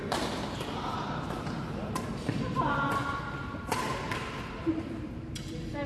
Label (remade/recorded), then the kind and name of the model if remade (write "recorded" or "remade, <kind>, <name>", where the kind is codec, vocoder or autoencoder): remade, vocoder, BigVGAN v2